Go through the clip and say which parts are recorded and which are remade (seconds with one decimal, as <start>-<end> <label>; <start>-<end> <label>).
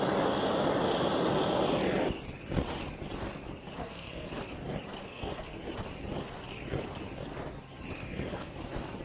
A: 0.0-3.8 recorded; 3.8-4.4 remade; 4.4-5.0 recorded; 5.0-5.6 remade; 5.6-8.0 recorded; 8.0-8.5 remade; 8.5-9.0 recorded